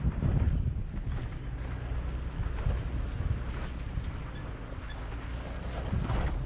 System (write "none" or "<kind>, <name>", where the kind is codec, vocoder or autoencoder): none